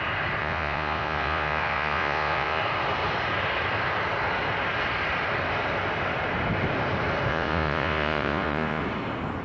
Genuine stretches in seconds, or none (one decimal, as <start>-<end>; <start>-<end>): 0.0-0.4; 2.6-7.3; 8.8-9.4